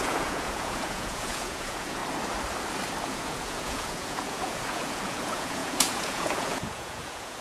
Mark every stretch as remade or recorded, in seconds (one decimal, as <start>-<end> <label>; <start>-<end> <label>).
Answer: 0.0-2.0 remade; 2.0-3.0 recorded; 3.0-7.4 remade